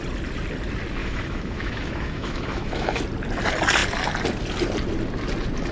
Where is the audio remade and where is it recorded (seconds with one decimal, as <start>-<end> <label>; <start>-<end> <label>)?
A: 0.0-1.0 recorded; 1.0-3.0 remade; 3.0-5.7 recorded